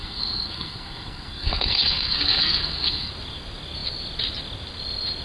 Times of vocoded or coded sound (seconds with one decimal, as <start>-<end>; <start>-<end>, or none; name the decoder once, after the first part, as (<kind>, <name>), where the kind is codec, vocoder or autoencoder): 0.0-3.1 (codec, SNAC)